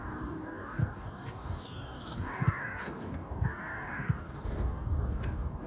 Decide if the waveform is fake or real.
fake